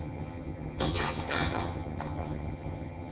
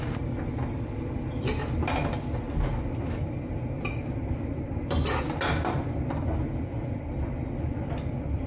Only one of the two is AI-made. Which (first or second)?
first